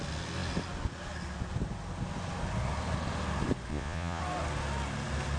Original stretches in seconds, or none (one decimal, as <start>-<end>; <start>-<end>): 0.0-3.7; 4.2-5.4